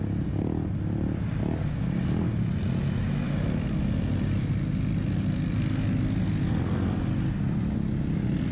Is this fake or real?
real